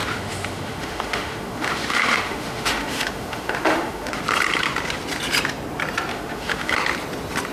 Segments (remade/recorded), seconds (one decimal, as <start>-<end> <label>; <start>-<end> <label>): 0.0-4.2 remade; 4.2-6.1 recorded; 6.1-6.7 remade; 6.7-7.5 recorded